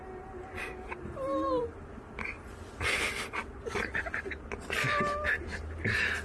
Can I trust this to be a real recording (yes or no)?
yes